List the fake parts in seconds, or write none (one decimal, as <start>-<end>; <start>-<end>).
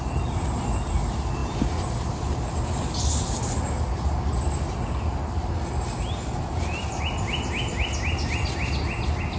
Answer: none